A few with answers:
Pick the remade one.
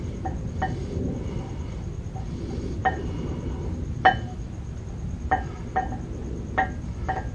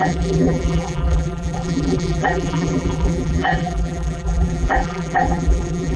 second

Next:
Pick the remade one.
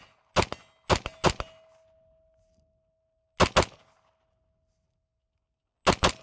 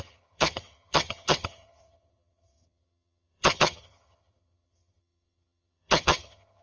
second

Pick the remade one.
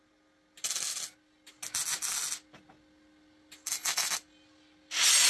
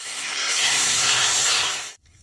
second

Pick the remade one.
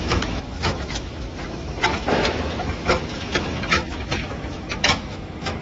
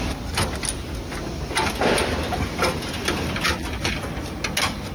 first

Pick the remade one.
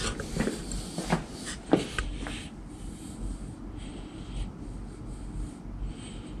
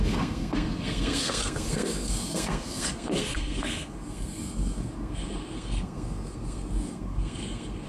second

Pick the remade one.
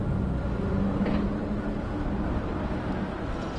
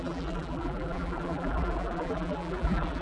second